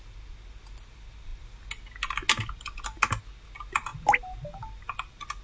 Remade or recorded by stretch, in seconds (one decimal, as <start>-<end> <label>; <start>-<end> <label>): 0.0-5.4 recorded